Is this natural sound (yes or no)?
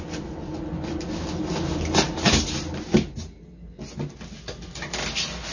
yes